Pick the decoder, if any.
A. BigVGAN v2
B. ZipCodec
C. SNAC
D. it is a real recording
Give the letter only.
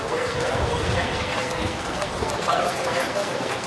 C